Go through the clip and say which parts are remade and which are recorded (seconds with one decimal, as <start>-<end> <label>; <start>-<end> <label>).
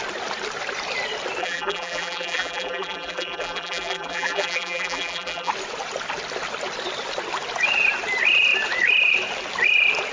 0.0-1.4 recorded; 1.4-5.5 remade; 5.5-10.1 recorded